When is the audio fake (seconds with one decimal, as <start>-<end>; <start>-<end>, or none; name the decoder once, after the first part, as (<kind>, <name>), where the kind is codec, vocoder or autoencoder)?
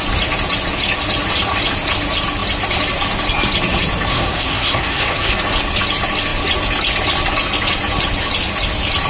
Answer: 4.1-5.3 (codec, SNAC)